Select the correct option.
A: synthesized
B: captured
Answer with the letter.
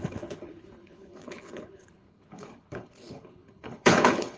A